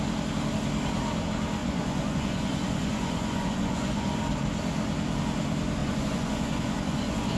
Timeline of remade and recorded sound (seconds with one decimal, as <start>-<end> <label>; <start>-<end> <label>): 0.0-1.6 recorded; 1.6-4.2 remade; 4.2-5.8 recorded; 5.8-7.4 remade